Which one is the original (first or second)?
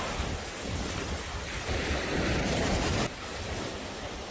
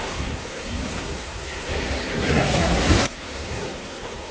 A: first